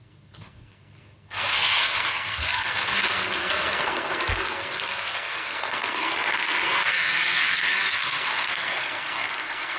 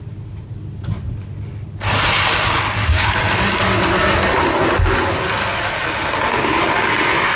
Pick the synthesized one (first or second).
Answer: first